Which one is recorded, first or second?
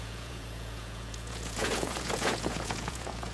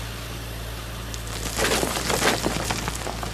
second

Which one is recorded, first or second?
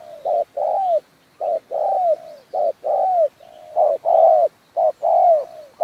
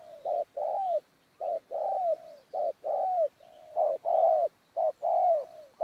first